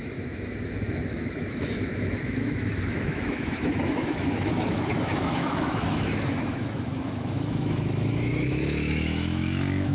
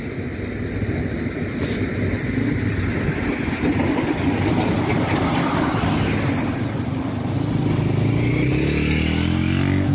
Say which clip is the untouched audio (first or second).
second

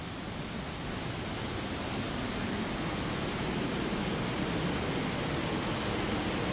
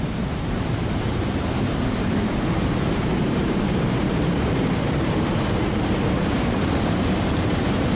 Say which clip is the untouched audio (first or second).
first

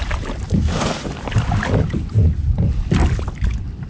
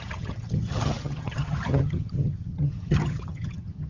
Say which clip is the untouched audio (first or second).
first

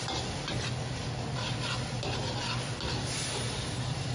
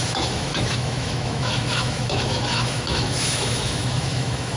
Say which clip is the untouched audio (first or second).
first